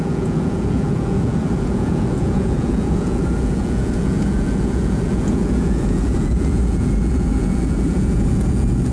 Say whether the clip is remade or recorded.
remade